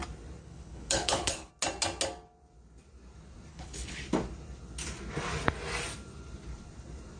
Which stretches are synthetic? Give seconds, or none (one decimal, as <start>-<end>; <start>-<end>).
0.4-1.5; 3.5-4.0